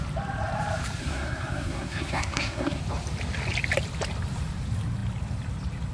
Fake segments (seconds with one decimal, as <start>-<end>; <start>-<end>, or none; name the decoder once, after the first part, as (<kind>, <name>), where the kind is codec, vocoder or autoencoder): 1.0-2.8 (codec, SNAC)